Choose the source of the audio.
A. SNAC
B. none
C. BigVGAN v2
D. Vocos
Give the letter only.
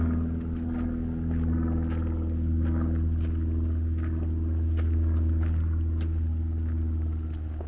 B